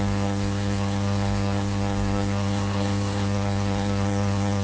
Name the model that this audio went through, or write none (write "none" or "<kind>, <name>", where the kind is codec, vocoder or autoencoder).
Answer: codec, SNAC